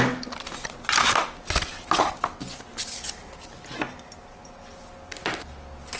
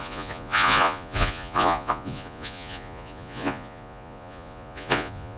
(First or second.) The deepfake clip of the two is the second